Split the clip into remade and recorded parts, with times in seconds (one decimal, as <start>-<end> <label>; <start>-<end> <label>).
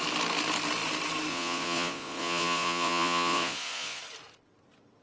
0.0-1.3 recorded; 1.3-4.0 remade; 4.0-5.0 recorded